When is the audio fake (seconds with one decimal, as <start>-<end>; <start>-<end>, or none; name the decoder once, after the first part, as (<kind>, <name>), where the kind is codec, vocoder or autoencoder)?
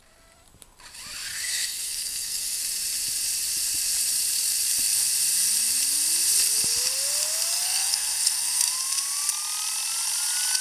1.3-2.6 (codec, SNAC); 7.5-8.7